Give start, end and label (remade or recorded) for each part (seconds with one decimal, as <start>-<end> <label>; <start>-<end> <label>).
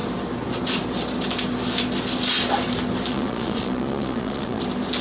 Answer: 0.0-3.1 recorded; 3.1-4.6 remade; 4.6-5.0 recorded